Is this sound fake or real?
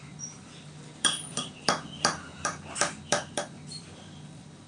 fake